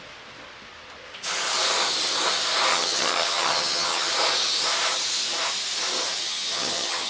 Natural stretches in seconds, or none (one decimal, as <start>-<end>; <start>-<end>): 0.0-2.7; 4.1-6.2